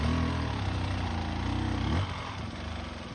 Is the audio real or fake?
real